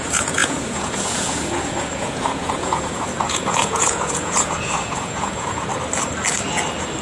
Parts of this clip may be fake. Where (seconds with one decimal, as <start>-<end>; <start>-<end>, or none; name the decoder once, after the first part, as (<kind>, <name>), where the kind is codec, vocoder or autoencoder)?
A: 0.0-5.7 (vocoder, Vocos)